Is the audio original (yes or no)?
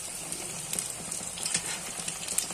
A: no